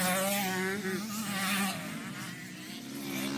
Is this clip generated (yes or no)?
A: no